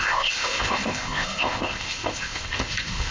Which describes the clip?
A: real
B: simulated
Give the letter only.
B